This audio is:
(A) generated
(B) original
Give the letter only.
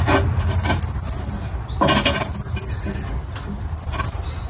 B